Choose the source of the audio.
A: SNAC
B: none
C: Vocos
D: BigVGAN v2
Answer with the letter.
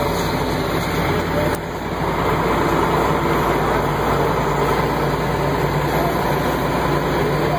B